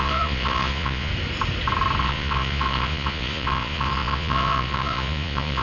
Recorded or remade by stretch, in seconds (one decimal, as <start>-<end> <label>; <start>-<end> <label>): 0.0-1.1 remade; 1.1-2.0 recorded; 2.0-5.6 remade